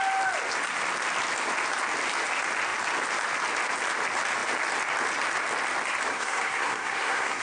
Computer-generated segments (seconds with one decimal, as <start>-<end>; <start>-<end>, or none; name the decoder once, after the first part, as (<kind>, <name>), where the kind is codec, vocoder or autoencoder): 6.1-7.4 (codec, SNAC)